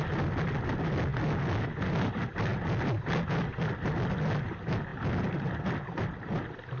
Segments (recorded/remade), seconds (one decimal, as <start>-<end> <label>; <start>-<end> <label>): 0.0-6.8 recorded